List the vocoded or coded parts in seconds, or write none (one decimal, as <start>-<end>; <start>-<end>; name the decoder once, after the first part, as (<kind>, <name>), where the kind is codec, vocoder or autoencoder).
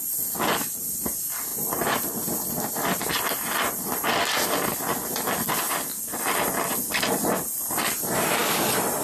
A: none